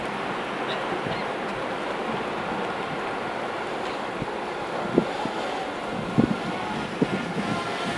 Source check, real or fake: real